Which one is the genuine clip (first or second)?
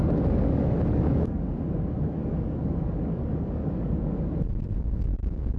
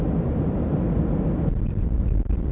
second